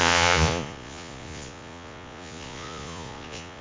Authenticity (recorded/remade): remade